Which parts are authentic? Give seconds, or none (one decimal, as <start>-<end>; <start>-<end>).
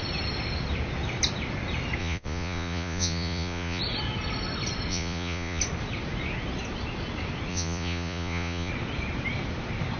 0.0-2.0; 3.8-4.9; 5.6-7.5; 8.7-10.0